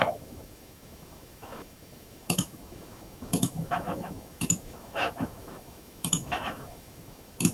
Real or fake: fake